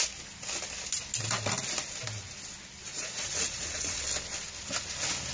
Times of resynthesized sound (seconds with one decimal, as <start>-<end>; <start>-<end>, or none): 2.9-4.0